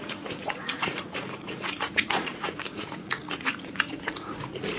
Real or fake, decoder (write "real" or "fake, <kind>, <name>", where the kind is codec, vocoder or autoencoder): fake, vocoder, Vocos